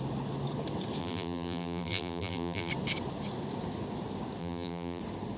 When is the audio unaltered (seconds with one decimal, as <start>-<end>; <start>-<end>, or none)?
0.0-1.0; 2.7-4.4; 5.0-5.4